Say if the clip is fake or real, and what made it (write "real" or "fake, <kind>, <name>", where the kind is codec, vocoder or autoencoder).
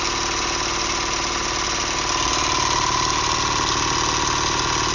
real